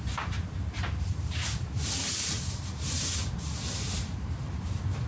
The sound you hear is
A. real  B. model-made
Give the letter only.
B